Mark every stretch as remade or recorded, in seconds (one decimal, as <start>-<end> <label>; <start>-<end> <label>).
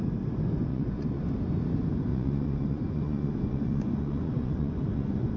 0.0-0.7 recorded; 0.7-1.2 remade; 1.2-2.1 recorded; 2.1-5.4 remade